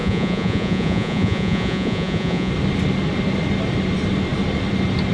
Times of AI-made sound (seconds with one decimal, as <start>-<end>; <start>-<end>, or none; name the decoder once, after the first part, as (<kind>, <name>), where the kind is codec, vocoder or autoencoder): 0.0-2.5 (vocoder, Vocos)